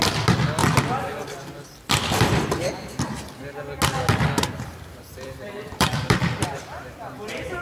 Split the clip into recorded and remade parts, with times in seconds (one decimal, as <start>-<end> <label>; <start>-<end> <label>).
0.0-0.6 recorded; 0.6-2.4 remade; 2.4-4.7 recorded; 4.7-7.6 remade

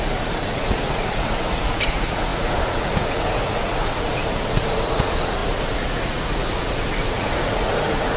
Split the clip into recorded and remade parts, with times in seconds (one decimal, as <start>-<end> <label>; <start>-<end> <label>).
0.0-8.2 remade

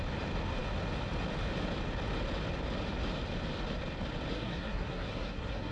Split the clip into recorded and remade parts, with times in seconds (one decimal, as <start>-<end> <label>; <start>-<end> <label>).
0.0-4.3 recorded; 4.3-5.7 remade

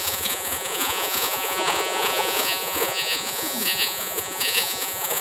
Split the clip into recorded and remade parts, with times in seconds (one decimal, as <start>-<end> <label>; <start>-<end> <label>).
0.0-5.2 remade

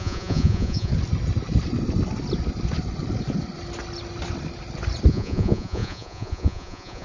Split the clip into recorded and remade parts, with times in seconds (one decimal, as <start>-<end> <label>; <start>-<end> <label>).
0.0-0.9 remade; 0.9-5.1 recorded; 5.1-7.0 remade

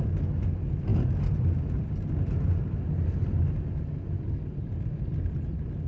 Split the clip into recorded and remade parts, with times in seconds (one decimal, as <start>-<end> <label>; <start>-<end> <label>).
0.0-5.9 recorded

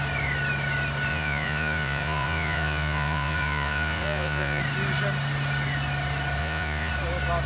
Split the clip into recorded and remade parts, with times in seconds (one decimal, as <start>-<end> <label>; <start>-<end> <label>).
0.0-1.1 recorded; 1.1-4.6 remade; 4.6-6.4 recorded; 6.4-6.9 remade; 6.9-7.5 recorded

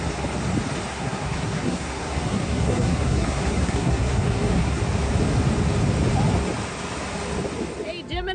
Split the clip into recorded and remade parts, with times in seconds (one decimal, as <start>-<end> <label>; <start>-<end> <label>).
0.0-0.9 recorded; 0.9-4.8 remade; 4.8-8.3 recorded